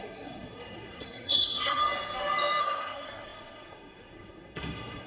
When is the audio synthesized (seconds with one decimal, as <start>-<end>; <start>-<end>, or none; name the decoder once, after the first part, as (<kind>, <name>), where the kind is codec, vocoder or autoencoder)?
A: 0.0-1.8 (codec, SNAC); 2.6-5.1